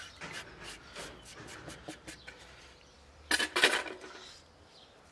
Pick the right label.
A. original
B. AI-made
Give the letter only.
A